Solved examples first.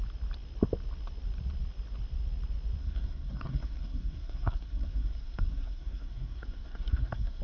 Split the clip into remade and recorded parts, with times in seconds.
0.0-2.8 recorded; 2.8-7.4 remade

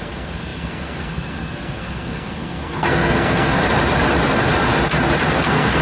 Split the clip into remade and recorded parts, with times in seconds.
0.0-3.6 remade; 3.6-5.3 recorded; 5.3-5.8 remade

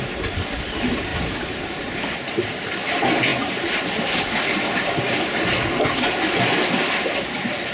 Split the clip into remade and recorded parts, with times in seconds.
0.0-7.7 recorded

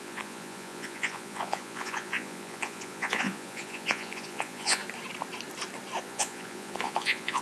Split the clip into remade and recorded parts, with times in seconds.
0.0-4.8 remade; 4.8-6.0 recorded; 6.0-7.4 remade

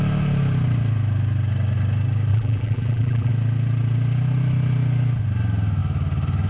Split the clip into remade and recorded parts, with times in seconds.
0.0-2.3 recorded; 2.3-3.3 remade; 3.3-6.5 recorded